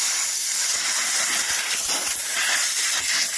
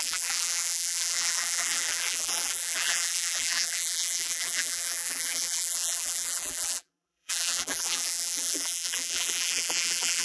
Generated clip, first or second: second